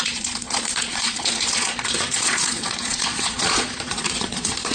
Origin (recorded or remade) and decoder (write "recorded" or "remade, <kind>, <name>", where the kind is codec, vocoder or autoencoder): remade, vocoder, Vocos